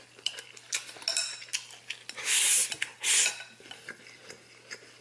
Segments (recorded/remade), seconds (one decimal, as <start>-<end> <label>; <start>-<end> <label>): 0.0-5.0 recorded